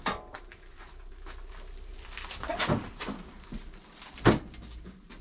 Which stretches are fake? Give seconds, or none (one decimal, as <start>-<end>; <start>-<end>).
0.5-1.1; 1.9-3.0